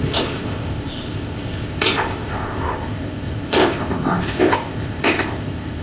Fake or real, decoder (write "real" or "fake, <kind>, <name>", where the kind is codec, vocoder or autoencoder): fake, codec, ZipCodec